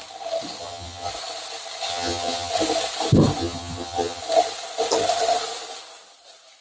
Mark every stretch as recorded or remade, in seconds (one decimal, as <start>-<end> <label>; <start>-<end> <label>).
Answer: 0.0-0.6 recorded; 0.6-1.1 remade; 1.1-1.9 recorded; 1.9-2.5 remade; 2.5-3.4 recorded; 3.4-4.2 remade; 4.2-6.6 recorded